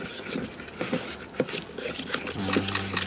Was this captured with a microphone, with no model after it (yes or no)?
yes